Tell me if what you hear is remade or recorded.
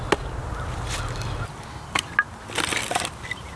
recorded